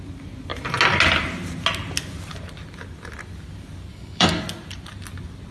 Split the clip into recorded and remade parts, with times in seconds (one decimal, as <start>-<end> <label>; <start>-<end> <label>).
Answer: 0.0-3.9 recorded; 3.9-4.4 remade; 4.4-5.5 recorded